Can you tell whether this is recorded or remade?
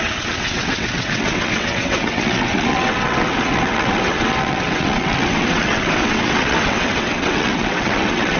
remade